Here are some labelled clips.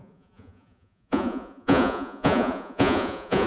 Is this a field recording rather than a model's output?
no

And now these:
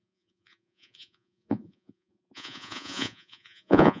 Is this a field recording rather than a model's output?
no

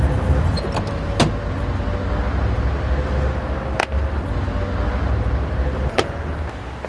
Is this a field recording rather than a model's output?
yes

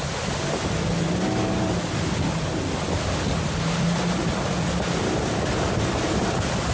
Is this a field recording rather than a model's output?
yes